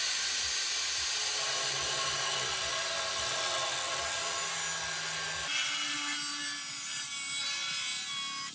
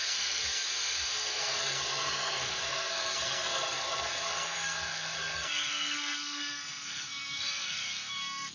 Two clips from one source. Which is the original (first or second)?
first